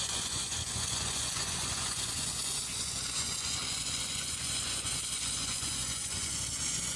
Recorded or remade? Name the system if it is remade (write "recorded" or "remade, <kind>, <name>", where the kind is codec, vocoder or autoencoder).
remade, vocoder, Vocos